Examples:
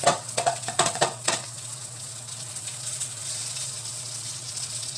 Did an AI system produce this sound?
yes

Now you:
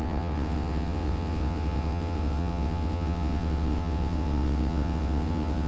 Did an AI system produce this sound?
yes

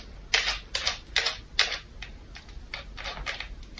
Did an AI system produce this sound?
no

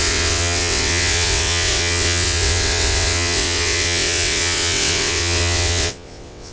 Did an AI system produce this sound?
yes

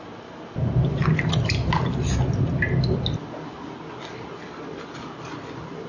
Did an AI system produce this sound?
no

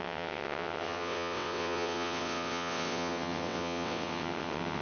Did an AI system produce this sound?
yes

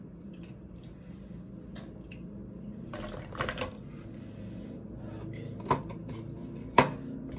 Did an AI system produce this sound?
no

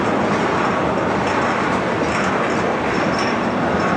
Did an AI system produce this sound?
no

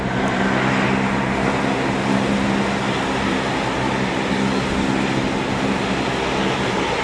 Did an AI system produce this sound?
no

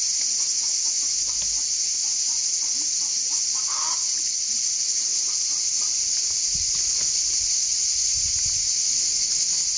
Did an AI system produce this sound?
no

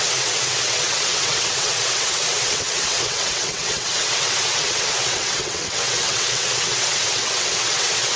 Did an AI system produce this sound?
yes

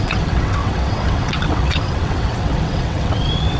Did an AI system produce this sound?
yes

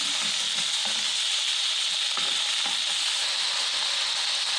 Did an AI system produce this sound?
no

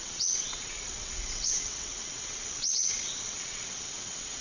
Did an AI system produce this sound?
yes